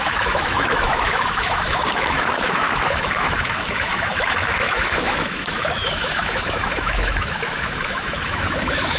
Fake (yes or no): yes